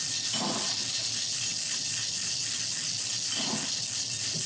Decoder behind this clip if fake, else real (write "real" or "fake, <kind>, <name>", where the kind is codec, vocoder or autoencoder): real